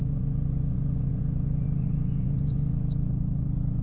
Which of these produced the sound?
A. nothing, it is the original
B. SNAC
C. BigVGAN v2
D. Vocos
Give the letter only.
D